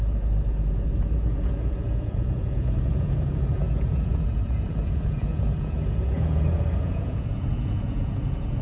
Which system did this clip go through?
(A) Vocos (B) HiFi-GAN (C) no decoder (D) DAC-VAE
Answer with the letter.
A